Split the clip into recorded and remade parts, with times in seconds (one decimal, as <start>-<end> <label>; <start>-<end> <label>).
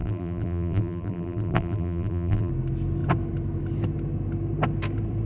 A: 0.0-2.5 remade; 2.5-5.3 recorded